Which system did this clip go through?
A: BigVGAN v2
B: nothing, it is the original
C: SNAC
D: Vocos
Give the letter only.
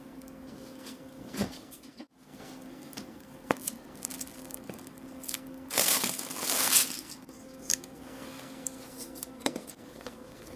C